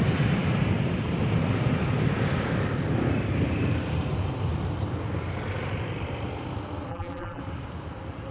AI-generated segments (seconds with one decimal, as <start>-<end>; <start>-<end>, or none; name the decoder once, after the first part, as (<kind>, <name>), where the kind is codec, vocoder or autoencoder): 6.9-7.4 (vocoder, BigVGAN v2)